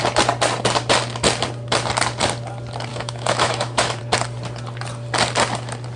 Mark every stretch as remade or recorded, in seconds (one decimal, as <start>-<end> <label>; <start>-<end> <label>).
0.0-2.9 recorded; 2.9-4.0 remade; 4.0-6.0 recorded